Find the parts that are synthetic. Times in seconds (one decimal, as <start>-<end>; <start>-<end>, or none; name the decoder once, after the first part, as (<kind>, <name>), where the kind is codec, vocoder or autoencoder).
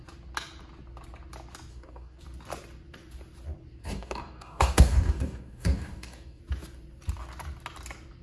1.7-2.2 (codec, DAC); 3.8-6.4